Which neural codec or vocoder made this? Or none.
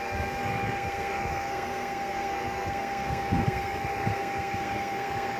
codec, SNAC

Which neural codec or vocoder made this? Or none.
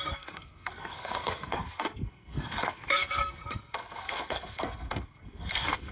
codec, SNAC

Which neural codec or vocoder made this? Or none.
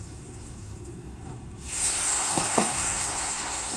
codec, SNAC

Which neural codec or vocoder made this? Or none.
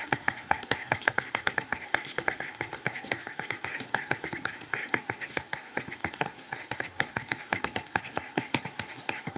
codec, SNAC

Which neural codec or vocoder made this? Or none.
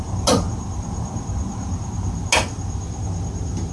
none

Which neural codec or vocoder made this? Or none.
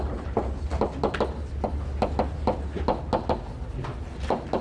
none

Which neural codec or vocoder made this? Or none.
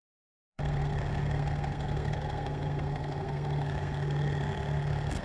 codec, SNAC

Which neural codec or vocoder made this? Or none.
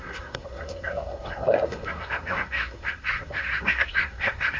codec, SNAC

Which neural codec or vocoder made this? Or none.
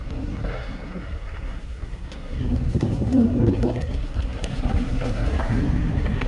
codec, SNAC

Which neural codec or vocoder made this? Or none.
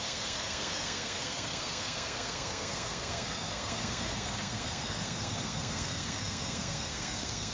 codec, SNAC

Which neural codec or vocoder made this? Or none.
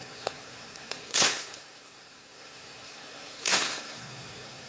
codec, SNAC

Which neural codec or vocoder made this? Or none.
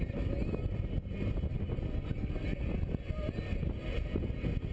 none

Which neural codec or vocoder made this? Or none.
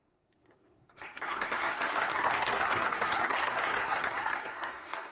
codec, SNAC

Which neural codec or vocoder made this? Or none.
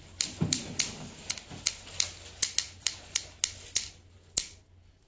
none